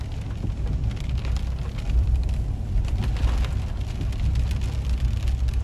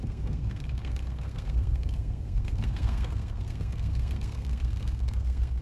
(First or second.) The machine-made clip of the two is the second